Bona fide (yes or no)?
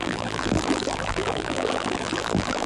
no